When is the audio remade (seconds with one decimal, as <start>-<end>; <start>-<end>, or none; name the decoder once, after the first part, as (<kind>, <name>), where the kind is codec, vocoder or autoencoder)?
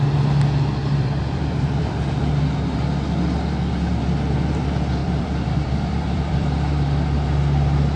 0.8-2.3 (vocoder, BigVGAN v2); 5.0-6.7